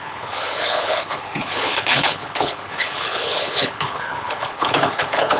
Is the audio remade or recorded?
remade